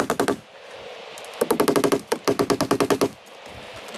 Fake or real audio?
real